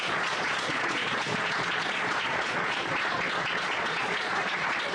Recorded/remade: remade